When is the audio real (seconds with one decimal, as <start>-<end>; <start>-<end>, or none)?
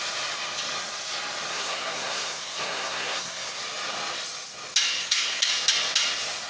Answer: 0.0-1.5; 3.6-5.0; 5.5-6.5